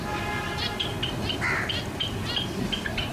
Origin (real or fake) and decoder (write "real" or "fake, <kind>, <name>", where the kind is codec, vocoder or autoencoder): real